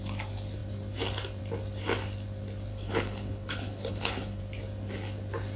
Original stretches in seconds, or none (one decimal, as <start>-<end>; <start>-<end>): 0.0-2.7; 4.4-5.6